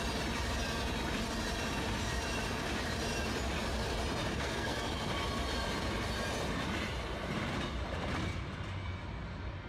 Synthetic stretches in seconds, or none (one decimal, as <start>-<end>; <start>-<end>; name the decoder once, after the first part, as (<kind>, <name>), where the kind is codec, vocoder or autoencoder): 4.3-5.1 (codec, SNAC)